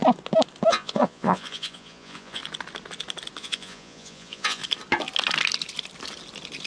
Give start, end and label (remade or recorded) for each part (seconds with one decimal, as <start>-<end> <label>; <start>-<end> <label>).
0.0-0.7 recorded; 0.7-2.4 remade; 2.4-3.4 recorded; 3.4-4.6 remade; 4.6-6.7 recorded